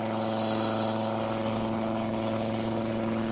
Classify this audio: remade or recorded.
recorded